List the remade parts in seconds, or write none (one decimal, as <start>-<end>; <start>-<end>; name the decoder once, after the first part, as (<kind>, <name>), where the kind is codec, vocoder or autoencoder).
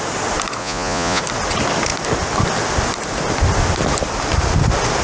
0.6-1.2 (vocoder, Vocos)